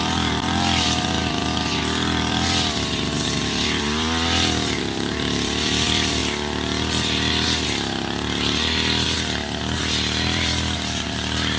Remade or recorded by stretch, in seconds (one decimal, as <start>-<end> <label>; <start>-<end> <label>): 0.0-6.2 remade; 6.2-9.8 recorded; 9.8-11.6 remade

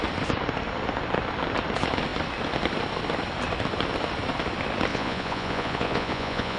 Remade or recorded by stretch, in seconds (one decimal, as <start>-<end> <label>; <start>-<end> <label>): 0.0-4.9 recorded; 4.9-6.6 remade

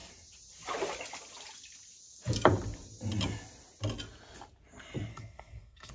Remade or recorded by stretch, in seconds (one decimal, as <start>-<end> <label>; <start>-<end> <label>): 0.0-5.1 recorded; 5.1-5.9 remade

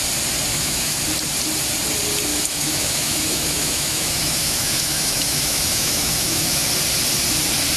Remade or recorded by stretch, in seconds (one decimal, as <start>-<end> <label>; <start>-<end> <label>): 0.0-0.5 recorded; 0.5-1.0 remade; 1.0-2.3 recorded; 2.3-6.7 remade; 6.7-7.8 recorded

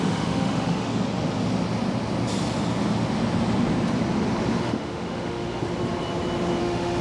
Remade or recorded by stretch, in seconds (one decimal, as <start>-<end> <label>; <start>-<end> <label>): 0.0-0.9 remade; 0.9-4.6 recorded; 4.6-5.6 remade; 5.6-6.6 recorded; 6.6-7.0 remade

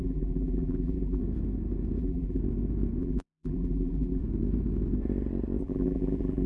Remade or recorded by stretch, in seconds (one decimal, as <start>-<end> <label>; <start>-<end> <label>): 0.0-1.2 remade; 1.2-2.0 recorded; 2.0-2.4 remade; 2.4-3.0 recorded; 3.0-4.2 remade; 4.2-5.6 recorded; 5.6-6.5 remade

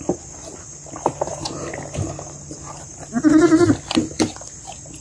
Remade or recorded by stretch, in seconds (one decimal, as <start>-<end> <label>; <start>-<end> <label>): 0.0-5.0 recorded

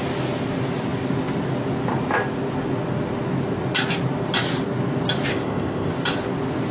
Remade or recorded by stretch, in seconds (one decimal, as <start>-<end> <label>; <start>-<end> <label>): 0.0-5.3 recorded; 5.3-5.9 remade; 5.9-6.7 recorded